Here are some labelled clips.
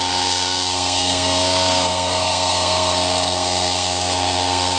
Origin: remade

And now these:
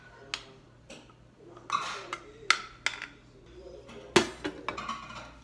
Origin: recorded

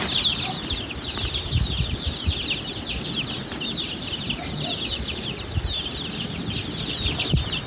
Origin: recorded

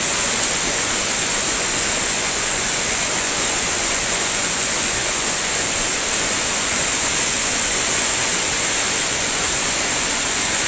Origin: remade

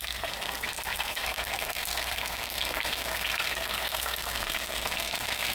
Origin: remade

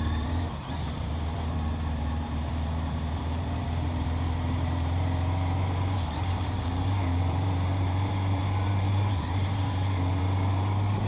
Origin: remade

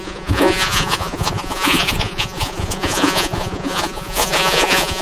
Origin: remade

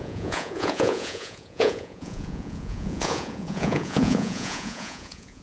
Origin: remade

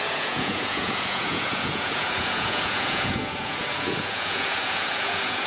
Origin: remade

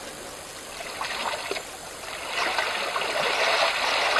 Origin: recorded